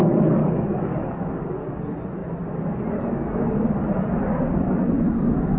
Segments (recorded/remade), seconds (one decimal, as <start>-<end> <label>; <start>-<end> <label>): 0.0-0.4 recorded; 0.4-1.2 remade; 1.2-5.6 recorded